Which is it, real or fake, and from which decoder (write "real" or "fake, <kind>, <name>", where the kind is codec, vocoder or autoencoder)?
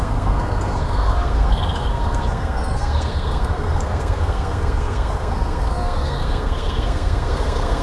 fake, codec, SNAC